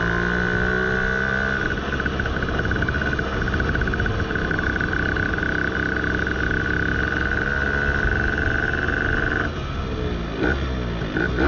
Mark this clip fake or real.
real